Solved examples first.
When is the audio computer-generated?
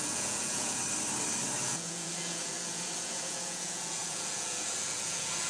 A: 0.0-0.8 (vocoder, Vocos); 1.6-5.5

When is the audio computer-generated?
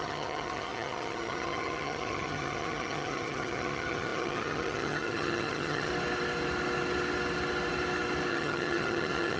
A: 0.0-5.9 (vocoder, HiFi-GAN); 8.3-9.4